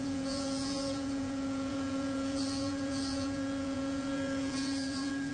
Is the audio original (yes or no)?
no